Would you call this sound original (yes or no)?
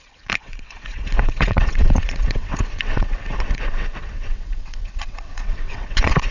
no